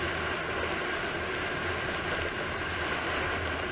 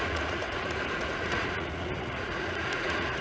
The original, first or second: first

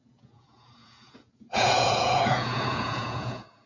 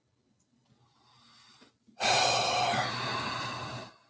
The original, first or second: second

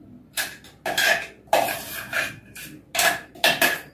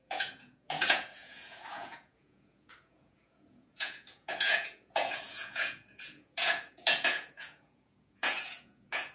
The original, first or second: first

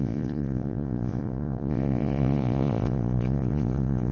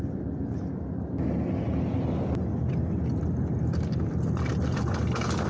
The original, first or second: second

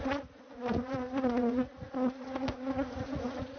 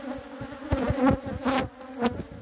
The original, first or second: second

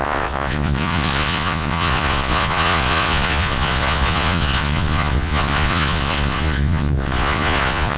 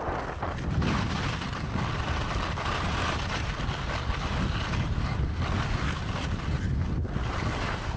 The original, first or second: second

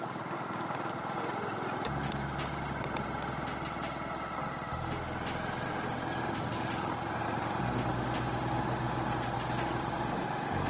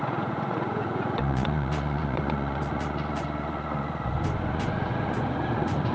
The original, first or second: first